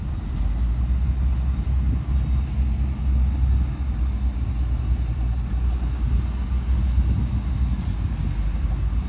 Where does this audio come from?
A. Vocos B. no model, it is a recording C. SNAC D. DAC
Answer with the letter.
B